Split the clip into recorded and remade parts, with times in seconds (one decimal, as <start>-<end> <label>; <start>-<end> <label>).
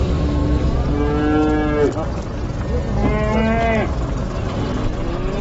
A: 0.0-5.4 recorded